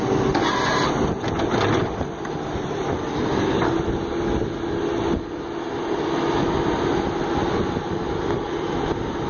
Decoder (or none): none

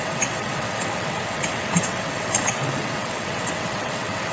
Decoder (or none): vocoder, WaveNeXt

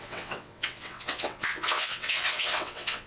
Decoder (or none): vocoder, WaveNeXt